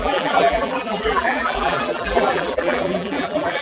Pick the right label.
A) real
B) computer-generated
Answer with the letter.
B